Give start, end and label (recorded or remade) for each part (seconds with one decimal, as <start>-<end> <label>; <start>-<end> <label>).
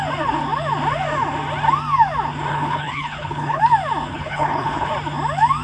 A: 0.0-2.5 recorded; 2.5-3.6 remade; 3.6-4.1 recorded; 4.1-4.9 remade; 4.9-5.6 recorded